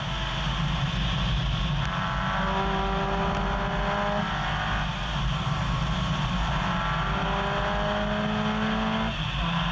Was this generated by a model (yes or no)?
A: no